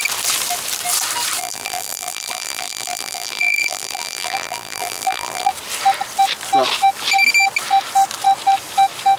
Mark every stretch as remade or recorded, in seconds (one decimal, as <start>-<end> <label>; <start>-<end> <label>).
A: 0.0-1.4 recorded; 1.4-5.5 remade; 5.5-9.2 recorded